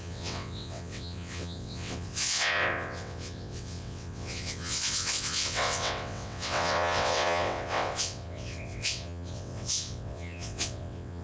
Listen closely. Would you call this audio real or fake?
fake